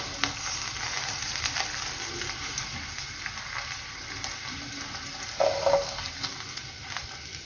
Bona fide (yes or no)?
yes